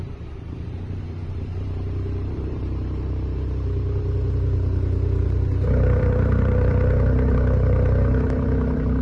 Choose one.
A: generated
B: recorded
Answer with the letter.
A